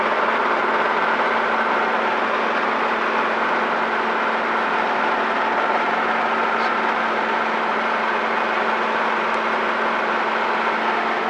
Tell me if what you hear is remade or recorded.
recorded